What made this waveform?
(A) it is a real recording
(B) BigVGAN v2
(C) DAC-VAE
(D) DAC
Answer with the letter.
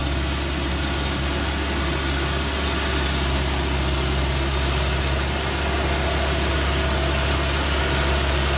A